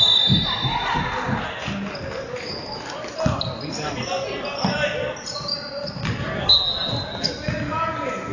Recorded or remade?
recorded